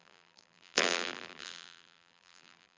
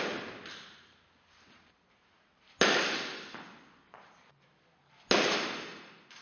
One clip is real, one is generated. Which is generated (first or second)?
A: first